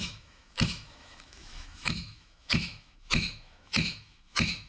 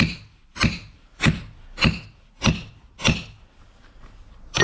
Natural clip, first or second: second